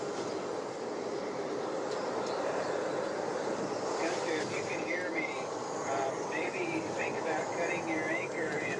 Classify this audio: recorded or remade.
recorded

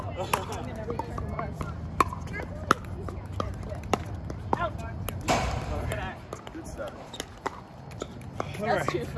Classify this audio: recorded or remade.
recorded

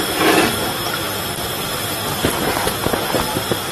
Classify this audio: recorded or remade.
recorded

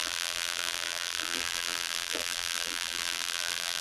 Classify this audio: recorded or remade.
remade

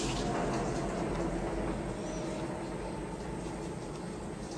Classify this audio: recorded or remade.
recorded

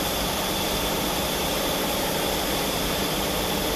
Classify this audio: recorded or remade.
remade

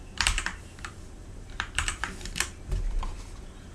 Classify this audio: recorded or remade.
remade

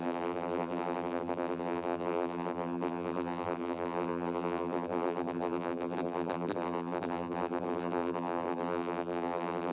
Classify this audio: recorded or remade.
remade